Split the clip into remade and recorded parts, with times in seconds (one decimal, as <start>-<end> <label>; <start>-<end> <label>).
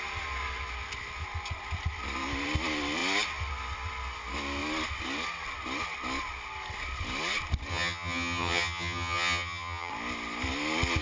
0.0-7.7 recorded; 7.7-9.9 remade; 9.9-11.0 recorded